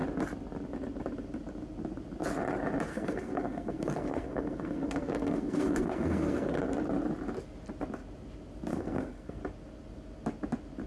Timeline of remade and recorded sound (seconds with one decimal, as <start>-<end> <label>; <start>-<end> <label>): 0.0-2.9 recorded; 2.9-6.6 remade; 6.6-8.7 recorded; 8.7-9.4 remade; 9.4-10.9 recorded